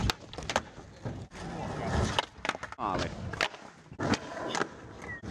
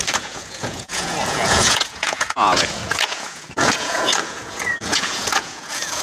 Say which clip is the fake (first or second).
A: second